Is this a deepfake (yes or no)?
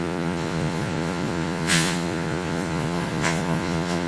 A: yes